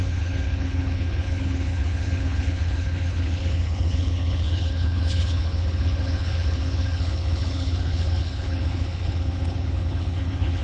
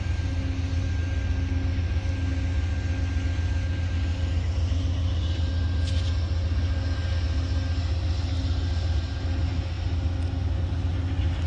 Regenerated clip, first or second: first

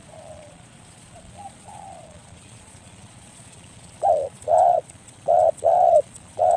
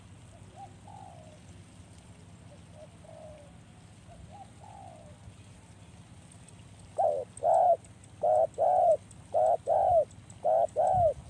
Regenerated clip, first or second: first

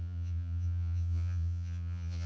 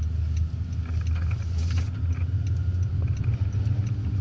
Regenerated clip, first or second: first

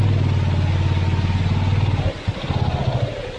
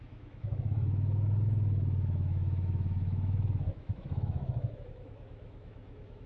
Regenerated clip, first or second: second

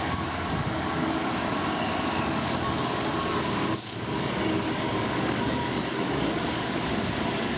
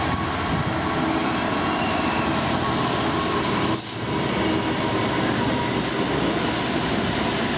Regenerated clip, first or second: first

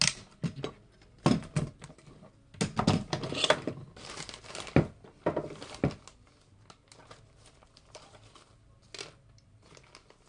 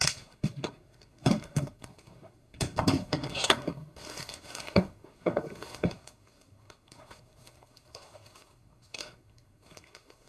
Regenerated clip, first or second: second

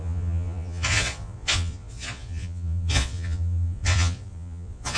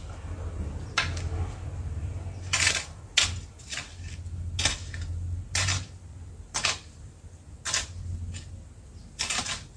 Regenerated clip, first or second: first